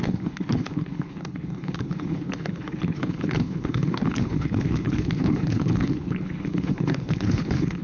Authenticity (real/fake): fake